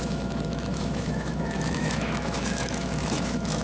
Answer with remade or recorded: remade